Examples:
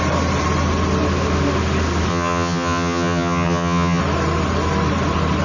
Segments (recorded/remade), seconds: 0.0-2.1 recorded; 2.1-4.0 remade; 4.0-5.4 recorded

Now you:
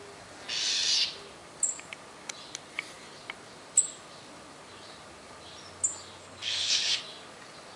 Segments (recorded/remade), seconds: 0.0-6.2 recorded; 6.2-7.0 remade; 7.0-7.8 recorded